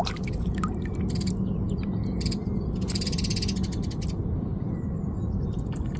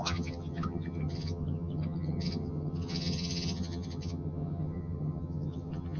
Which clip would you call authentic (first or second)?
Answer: first